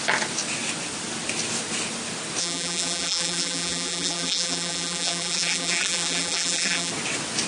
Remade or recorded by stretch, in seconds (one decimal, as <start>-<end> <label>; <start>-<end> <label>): 0.0-2.4 recorded; 2.4-6.9 remade; 6.9-7.5 recorded